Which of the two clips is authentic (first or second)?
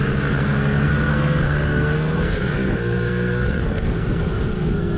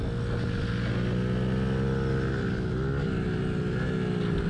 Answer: second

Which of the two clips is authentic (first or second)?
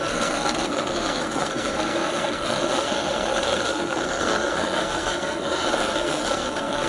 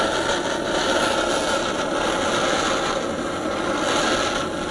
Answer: second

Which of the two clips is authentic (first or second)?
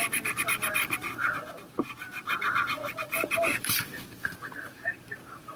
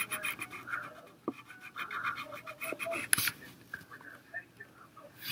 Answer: second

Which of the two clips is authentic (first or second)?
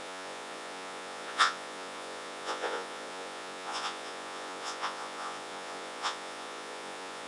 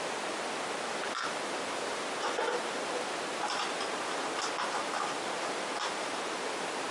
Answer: second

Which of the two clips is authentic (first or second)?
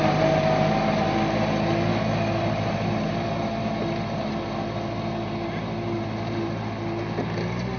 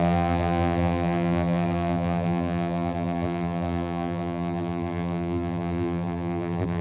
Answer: first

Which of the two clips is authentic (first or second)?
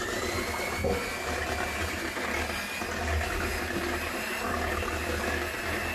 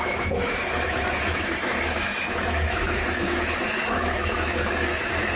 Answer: first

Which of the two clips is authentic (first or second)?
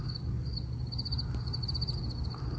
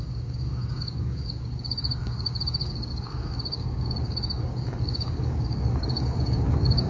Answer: first